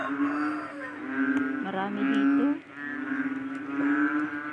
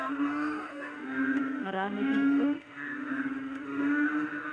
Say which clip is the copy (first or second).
second